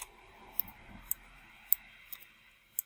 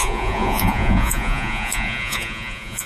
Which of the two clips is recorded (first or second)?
first